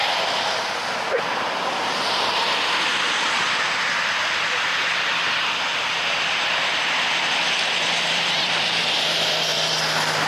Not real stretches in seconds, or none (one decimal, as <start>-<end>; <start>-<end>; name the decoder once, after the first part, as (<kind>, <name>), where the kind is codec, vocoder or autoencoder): 1.2-9.5 (vocoder, BigVGAN v2)